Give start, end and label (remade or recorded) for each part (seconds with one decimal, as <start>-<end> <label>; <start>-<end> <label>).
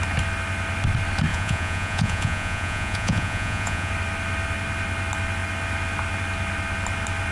0.0-1.3 recorded; 1.3-3.9 remade; 3.9-7.3 recorded